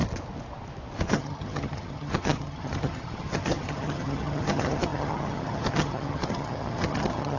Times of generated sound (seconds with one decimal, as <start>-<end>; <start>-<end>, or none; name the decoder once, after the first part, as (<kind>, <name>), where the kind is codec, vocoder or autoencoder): 1.1-7.4 (vocoder, HiFi-GAN)